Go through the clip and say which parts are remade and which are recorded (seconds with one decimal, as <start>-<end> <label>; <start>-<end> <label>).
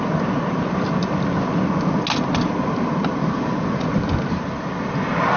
0.0-5.4 recorded